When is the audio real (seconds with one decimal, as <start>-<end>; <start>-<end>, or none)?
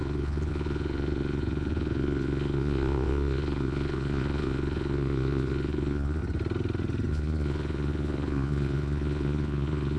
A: 6.2-7.1